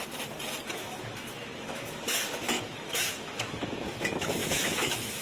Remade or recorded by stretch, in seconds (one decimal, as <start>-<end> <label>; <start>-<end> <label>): 0.0-0.7 recorded; 0.7-5.2 remade